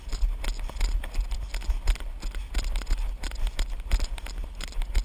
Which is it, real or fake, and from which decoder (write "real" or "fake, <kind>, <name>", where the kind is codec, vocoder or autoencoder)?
real